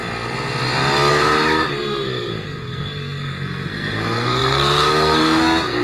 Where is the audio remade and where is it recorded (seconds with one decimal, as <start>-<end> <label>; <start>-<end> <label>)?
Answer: 0.0-1.1 recorded; 1.1-5.8 remade